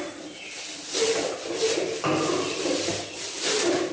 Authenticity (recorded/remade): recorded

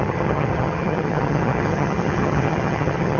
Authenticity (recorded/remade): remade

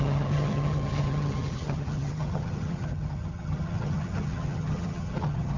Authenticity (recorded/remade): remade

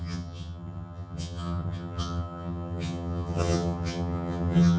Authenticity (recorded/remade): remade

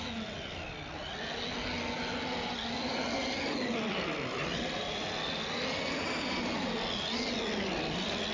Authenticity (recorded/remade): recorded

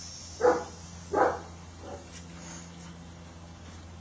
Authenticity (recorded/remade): recorded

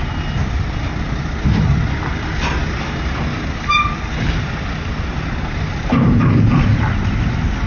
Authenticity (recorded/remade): recorded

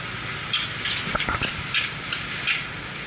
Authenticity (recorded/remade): recorded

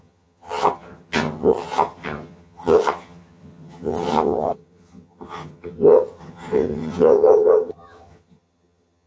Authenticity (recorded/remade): remade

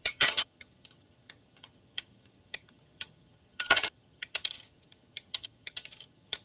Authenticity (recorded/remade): remade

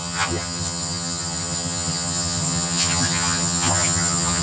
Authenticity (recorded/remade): remade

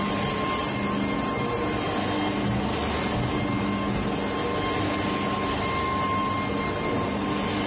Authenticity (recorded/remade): recorded